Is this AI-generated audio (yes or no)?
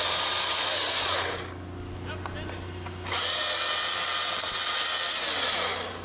no